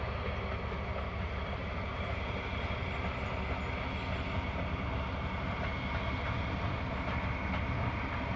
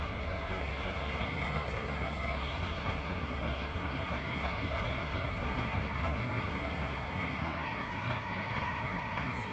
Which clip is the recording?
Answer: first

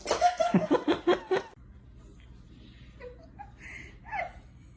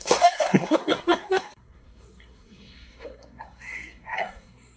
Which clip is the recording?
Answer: first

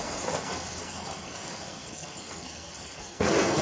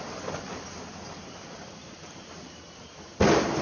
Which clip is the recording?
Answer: second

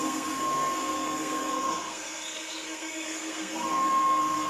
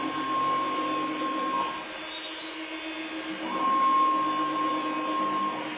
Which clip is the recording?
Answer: second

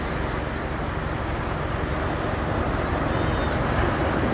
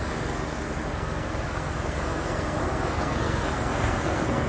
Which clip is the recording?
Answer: first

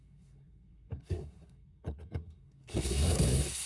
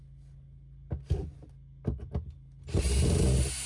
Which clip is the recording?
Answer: second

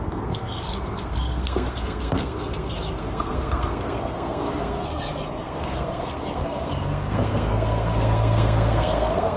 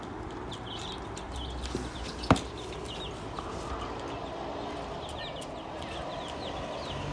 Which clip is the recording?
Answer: second